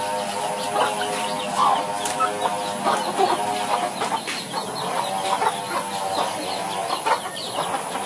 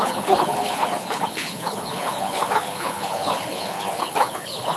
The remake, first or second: second